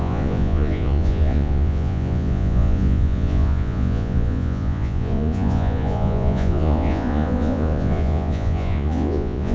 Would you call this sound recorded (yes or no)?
no